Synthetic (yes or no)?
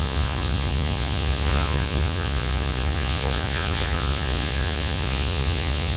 yes